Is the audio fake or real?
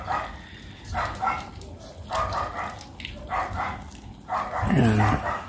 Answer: real